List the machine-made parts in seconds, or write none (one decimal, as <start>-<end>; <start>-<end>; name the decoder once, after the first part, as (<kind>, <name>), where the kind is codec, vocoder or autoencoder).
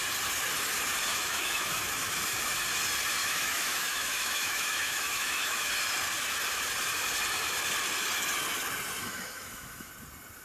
1.1-1.8 (autoencoder, DAC-VAE); 3.2-5.7; 9.0-9.9